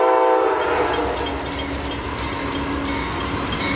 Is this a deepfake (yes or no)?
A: no